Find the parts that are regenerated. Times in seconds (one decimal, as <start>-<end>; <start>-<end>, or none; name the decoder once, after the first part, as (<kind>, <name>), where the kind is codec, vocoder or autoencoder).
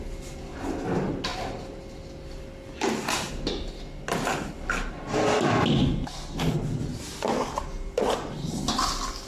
none